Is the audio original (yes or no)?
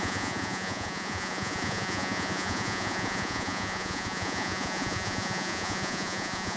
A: no